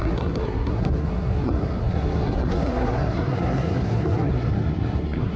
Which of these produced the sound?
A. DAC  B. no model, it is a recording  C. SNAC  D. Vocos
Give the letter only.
C